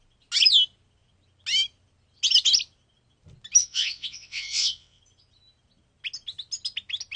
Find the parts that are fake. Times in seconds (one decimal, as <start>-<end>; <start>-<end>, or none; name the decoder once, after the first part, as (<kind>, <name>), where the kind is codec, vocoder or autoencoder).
3.6-5.0 (vocoder, WaveNeXt)